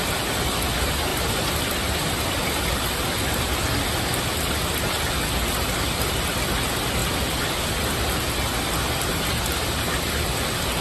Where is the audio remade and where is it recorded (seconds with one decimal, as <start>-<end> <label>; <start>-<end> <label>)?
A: 0.0-10.8 recorded